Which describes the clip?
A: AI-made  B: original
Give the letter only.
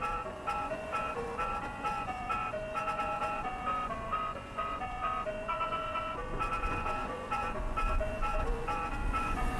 A